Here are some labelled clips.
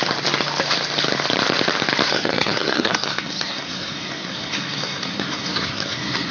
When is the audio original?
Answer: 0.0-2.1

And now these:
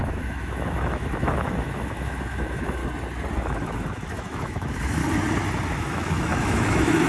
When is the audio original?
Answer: 2.8-3.4; 5.0-5.7

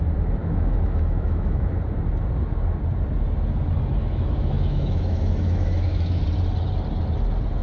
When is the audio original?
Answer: 0.0-0.4; 1.7-4.0; 6.2-7.6